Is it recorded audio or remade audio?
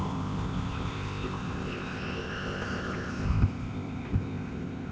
remade